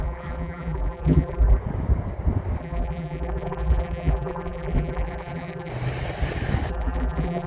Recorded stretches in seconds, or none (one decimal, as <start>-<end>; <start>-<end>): 1.6-2.6; 5.7-6.7